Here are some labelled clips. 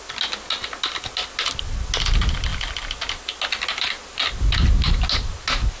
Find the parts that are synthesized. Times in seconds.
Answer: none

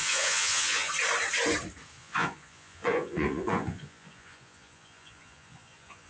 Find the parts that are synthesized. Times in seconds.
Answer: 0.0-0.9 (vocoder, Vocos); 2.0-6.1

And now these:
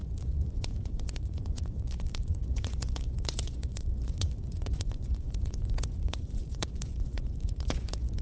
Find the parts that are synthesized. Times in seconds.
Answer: 0.0-8.2 (vocoder, Vocos)

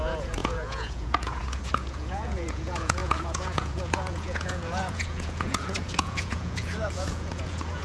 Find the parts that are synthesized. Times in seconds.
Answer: 0.0-7.8 (vocoder, Vocos)

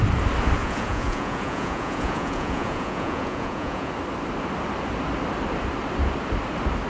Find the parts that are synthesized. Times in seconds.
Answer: 0.6-3.9 (vocoder, Vocos)

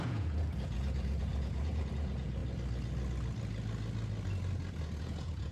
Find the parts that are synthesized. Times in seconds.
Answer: 0.0-2.4 (vocoder, Vocos); 5.0-5.5

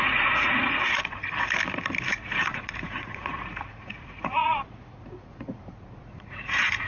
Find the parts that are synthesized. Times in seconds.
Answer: 0.0-1.2 (vocoder, Vocos); 2.1-6.9

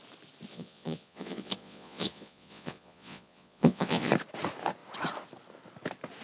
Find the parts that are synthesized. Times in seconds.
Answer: 0.5-4.1 (vocoder, Vocos)